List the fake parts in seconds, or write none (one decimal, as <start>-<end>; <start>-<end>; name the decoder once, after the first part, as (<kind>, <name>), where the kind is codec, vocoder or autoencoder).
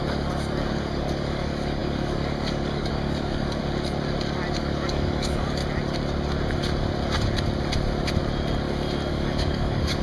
0.0-3.6 (codec, DAC); 4.6-5.6; 9.1-10.0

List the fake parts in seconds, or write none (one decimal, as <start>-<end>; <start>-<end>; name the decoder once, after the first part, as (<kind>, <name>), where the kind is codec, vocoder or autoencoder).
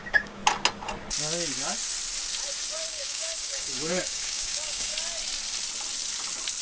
0.0-0.4 (codec, DAC); 2.9-4.9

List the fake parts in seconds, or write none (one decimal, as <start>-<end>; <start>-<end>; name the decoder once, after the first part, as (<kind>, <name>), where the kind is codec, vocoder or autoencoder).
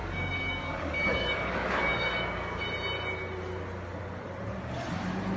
0.0-2.6 (codec, DAC)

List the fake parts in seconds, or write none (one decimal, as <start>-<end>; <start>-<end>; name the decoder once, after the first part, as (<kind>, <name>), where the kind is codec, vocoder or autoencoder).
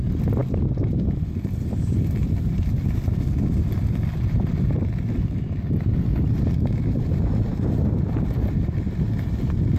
none